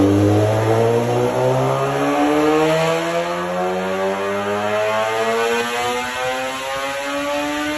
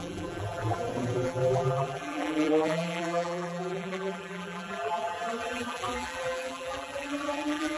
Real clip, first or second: first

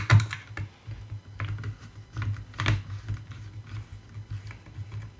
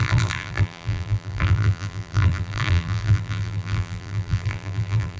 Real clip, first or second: first